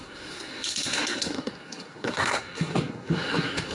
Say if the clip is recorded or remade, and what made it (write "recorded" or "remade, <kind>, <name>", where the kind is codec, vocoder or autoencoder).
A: remade, codec, SNAC